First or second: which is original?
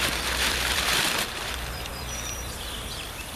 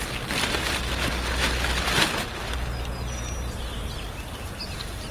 second